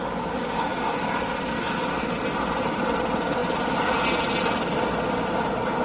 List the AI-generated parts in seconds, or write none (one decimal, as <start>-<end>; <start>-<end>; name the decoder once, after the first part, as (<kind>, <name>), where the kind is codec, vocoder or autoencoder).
none